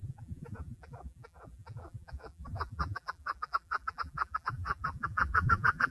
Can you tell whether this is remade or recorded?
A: remade